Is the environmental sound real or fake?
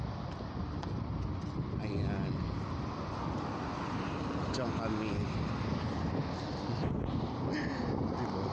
real